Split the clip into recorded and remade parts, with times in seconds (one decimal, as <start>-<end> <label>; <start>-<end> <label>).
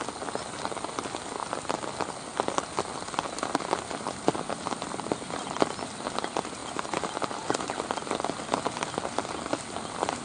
0.0-10.2 recorded